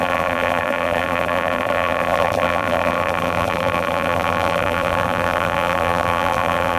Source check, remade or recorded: remade